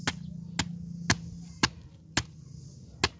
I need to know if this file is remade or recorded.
recorded